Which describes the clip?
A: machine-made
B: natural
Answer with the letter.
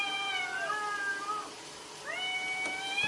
B